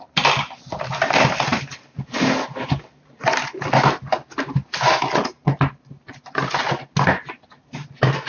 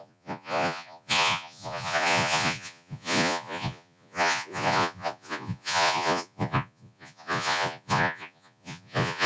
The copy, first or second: second